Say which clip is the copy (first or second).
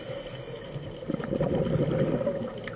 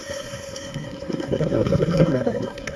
second